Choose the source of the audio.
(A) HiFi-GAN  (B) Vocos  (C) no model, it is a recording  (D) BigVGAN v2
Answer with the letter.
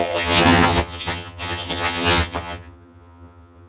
A